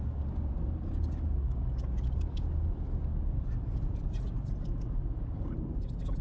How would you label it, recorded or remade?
recorded